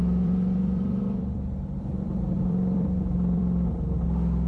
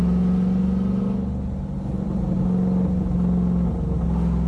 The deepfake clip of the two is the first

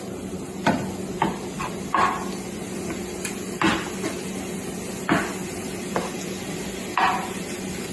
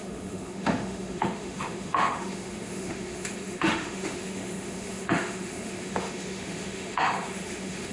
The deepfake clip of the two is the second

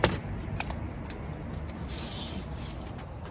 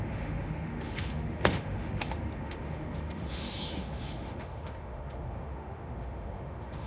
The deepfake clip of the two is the second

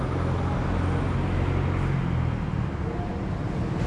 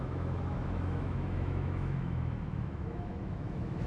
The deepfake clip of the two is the second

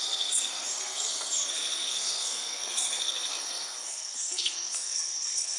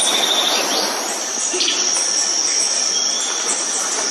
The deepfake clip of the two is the first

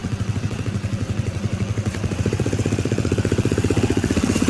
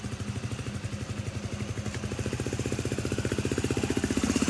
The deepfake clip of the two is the first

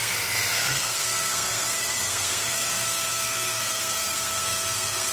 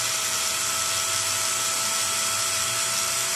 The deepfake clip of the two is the first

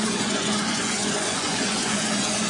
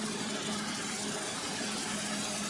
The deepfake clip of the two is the first